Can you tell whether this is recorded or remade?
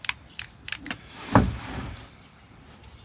remade